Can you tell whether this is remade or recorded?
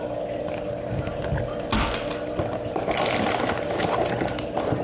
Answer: recorded